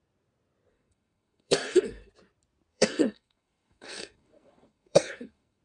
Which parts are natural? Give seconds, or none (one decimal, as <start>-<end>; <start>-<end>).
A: 0.0-0.7; 2.1-2.7